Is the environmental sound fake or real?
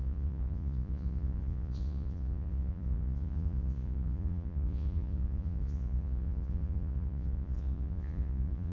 fake